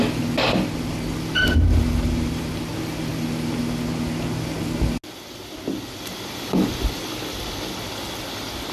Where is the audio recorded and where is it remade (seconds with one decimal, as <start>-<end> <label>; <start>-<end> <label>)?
0.0-8.7 recorded